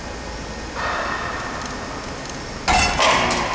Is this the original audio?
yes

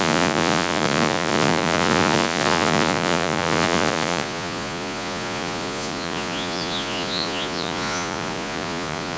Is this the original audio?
no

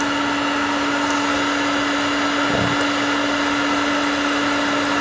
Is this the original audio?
yes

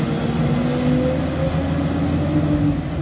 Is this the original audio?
yes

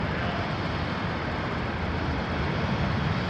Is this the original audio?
yes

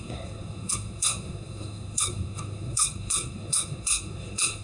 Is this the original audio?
no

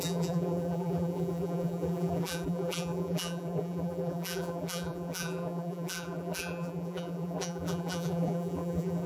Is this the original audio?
no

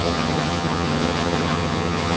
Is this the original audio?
no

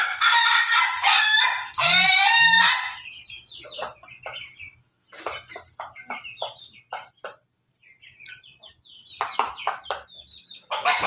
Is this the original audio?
yes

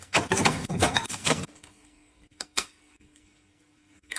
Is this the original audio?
no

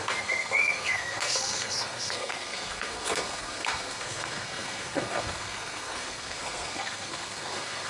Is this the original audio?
no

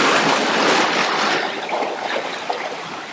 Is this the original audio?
no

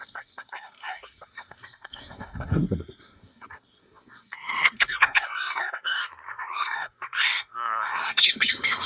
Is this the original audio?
no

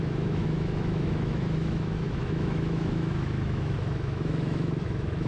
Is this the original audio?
no